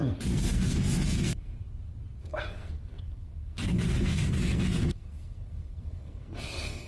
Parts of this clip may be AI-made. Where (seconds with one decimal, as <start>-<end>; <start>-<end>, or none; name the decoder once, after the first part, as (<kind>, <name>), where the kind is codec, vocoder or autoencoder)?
0.0-1.6 (codec, SNAC); 2.2-6.9